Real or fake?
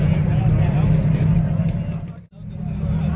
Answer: real